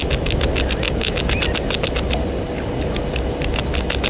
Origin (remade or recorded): recorded